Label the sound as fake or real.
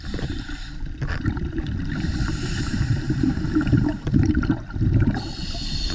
fake